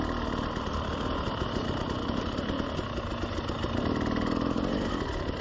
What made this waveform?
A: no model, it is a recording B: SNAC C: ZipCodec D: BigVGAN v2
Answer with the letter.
A